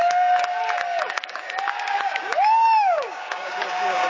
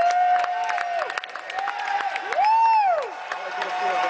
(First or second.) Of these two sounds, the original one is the second